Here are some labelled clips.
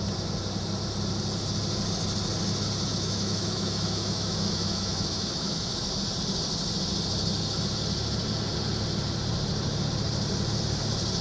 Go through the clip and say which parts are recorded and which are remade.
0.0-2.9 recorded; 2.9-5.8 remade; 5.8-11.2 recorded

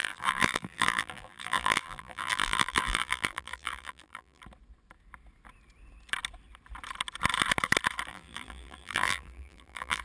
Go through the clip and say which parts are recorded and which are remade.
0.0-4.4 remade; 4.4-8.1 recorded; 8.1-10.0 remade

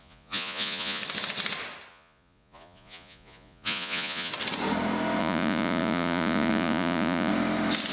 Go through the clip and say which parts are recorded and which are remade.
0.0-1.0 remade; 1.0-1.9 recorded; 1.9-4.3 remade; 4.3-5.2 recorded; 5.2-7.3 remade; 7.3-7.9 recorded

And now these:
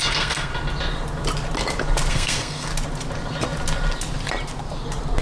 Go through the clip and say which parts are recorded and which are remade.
0.0-0.5 remade; 0.5-2.1 recorded; 2.1-2.7 remade; 2.7-5.2 recorded